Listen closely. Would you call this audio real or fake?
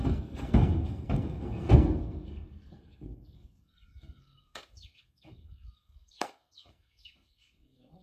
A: fake